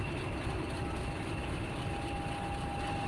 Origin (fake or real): real